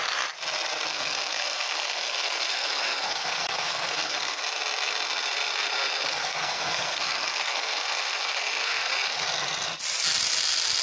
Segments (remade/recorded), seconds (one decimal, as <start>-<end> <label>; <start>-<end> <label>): 0.0-0.9 recorded; 0.9-4.4 remade; 4.4-6.2 recorded; 6.2-8.9 remade; 8.9-10.8 recorded